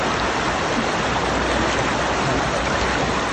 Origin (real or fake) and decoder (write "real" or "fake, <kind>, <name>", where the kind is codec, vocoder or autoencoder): real